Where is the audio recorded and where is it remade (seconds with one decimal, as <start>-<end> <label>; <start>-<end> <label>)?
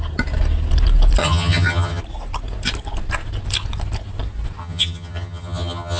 0.0-1.2 recorded; 1.2-2.0 remade; 2.0-4.6 recorded; 4.6-6.0 remade